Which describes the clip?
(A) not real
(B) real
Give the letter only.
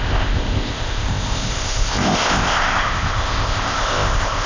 A